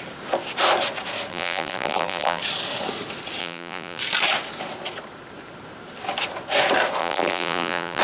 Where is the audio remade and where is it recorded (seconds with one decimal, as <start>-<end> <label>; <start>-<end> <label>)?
0.0-1.3 recorded; 1.3-2.4 remade; 2.4-3.4 recorded; 3.4-4.0 remade; 4.0-7.0 recorded; 7.0-8.0 remade